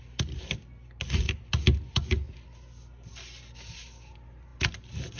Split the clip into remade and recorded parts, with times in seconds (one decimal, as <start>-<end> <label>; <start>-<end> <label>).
0.0-5.2 recorded